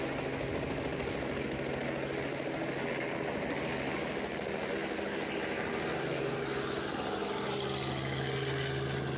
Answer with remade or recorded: recorded